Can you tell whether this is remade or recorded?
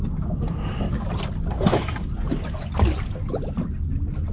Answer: recorded